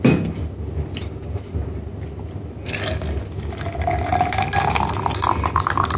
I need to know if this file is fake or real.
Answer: real